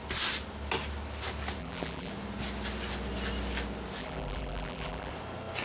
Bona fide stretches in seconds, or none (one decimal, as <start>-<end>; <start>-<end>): 0.0-1.6; 2.1-4.0; 5.1-5.6

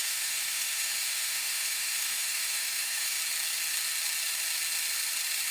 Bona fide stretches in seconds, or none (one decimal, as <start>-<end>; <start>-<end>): 3.2-5.5